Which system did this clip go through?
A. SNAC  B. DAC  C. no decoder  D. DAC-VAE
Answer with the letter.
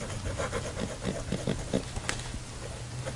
C